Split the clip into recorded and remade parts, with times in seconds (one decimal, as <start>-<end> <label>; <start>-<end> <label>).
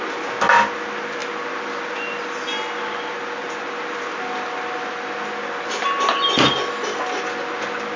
0.0-8.0 recorded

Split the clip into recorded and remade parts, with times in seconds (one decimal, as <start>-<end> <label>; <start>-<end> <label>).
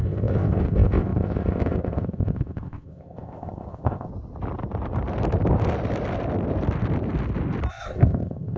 0.0-4.1 remade; 4.1-7.7 recorded; 7.7-8.6 remade